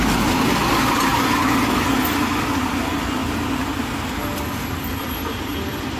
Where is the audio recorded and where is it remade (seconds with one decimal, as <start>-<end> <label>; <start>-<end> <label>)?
0.0-6.0 recorded